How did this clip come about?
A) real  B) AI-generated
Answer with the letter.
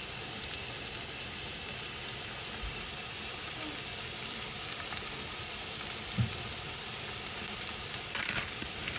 A